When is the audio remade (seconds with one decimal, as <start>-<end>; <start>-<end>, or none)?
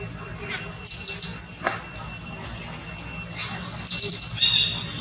none